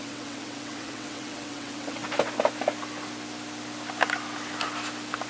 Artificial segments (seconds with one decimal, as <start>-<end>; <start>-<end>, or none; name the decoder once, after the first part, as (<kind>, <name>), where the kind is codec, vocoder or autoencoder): 0.0-2.0 (vocoder, WaveNeXt)

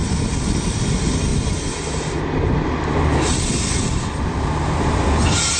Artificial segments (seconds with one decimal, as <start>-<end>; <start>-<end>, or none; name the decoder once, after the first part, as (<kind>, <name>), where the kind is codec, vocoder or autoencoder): none

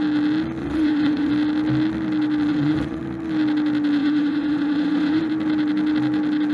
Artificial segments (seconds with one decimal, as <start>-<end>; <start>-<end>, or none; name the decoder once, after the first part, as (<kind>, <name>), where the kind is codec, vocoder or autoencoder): 0.6-1.3 (vocoder, WaveNeXt); 2.5-3.0; 4.0-5.3

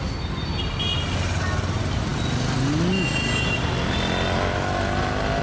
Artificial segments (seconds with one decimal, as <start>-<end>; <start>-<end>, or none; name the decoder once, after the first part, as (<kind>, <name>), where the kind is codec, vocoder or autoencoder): none

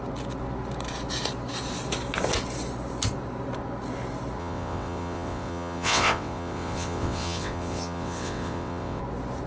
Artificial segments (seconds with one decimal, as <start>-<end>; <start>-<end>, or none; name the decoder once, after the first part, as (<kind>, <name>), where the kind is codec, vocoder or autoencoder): 4.4-9.0 (vocoder, WaveNeXt)

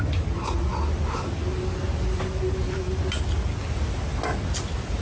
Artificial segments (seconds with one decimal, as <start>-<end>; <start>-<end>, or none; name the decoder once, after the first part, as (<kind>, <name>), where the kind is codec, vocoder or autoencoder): none

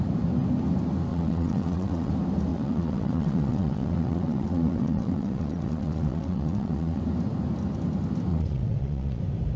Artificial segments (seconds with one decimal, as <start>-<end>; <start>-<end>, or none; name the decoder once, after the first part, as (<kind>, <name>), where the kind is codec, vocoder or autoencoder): 1.1-2.1 (vocoder, WaveNeXt); 2.5-7.0; 8.3-9.2